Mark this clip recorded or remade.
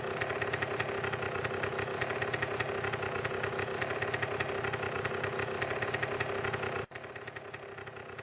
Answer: recorded